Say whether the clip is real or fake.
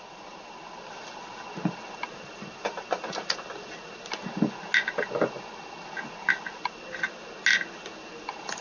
real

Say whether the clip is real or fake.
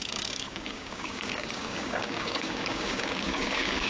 fake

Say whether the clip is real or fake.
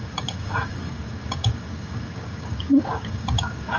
fake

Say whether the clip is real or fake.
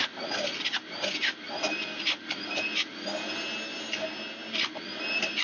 real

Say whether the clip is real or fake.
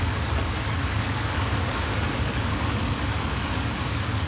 fake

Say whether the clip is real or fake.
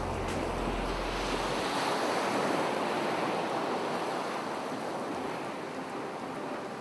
real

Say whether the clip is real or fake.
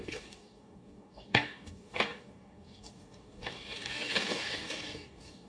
fake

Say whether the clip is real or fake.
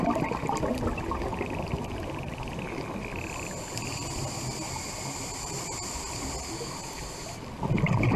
real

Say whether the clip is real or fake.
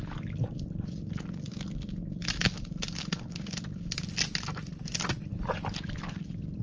real